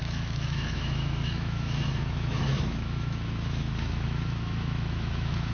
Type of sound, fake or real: fake